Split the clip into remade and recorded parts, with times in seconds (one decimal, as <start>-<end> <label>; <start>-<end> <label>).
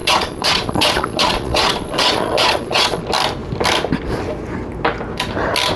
0.0-3.0 remade; 3.0-5.8 recorded